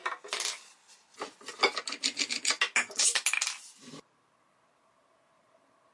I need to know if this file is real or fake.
real